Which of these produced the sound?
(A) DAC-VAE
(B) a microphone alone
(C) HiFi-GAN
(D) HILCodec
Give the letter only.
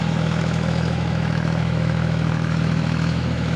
A